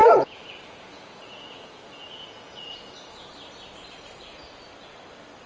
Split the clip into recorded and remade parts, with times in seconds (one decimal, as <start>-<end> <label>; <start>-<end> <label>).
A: 0.0-3.3 remade; 3.3-5.5 recorded